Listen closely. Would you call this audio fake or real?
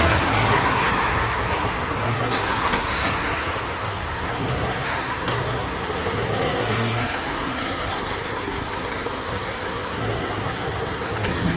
fake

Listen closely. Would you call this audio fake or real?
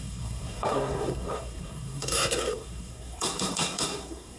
fake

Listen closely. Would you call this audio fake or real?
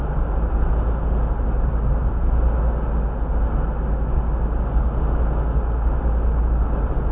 real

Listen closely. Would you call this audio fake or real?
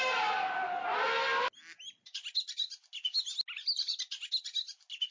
real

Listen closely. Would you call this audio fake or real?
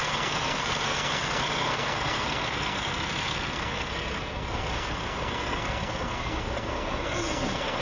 fake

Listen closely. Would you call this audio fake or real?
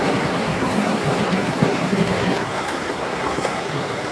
fake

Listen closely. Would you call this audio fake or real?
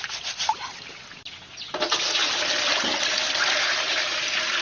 real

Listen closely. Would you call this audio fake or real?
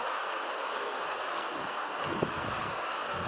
fake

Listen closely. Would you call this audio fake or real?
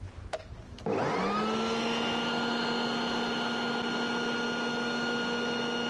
real